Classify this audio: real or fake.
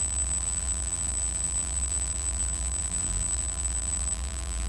fake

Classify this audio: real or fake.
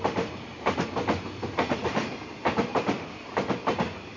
real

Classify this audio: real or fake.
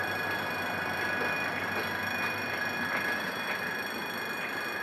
real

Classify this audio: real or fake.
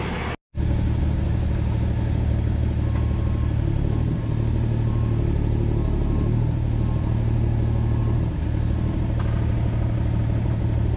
real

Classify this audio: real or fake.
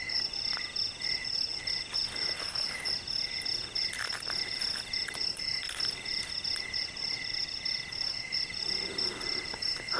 real